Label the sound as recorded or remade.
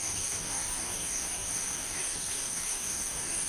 remade